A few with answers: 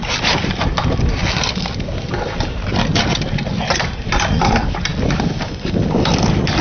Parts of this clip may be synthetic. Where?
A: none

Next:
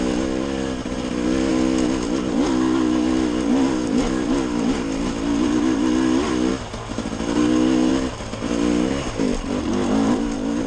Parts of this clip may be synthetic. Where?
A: none